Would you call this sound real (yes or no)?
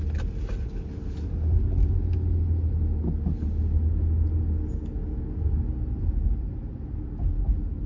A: yes